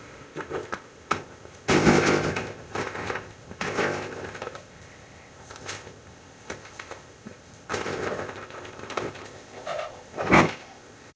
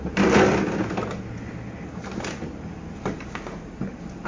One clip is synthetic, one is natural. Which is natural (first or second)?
second